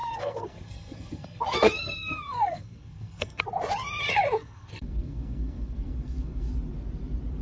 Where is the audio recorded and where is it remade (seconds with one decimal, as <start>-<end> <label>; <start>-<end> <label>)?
0.0-3.4 remade; 3.4-4.4 recorded; 4.4-6.5 remade; 6.5-7.4 recorded